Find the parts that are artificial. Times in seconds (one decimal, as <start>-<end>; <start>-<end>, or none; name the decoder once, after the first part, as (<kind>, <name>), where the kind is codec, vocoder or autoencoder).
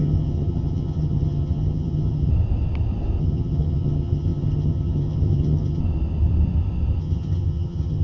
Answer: 0.0-2.3 (vocoder, HiFi-GAN); 3.2-5.8; 7.0-8.0